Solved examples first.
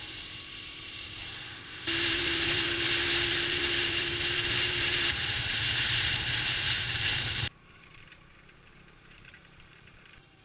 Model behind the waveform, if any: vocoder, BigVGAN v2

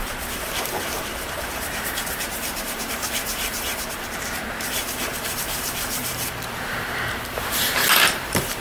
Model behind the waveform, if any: vocoder, BigVGAN v2